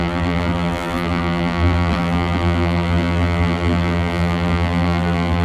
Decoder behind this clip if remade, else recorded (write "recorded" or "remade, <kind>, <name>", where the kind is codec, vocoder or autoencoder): remade, vocoder, BigVGAN v2